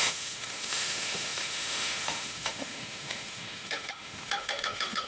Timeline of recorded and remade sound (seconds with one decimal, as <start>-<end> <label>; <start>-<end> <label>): 0.0-5.1 remade